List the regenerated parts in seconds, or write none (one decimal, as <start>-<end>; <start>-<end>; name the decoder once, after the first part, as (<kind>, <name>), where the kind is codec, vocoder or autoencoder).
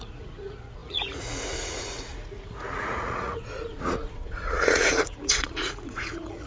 0.0-6.5 (vocoder, Vocos)